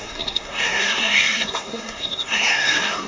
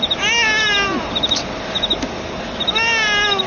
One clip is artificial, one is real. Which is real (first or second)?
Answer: second